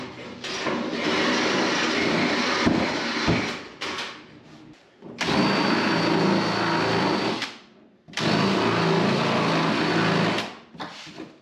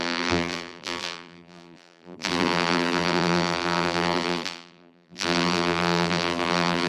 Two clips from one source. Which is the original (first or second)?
first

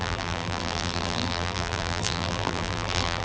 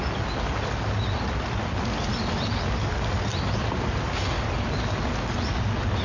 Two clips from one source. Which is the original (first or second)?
second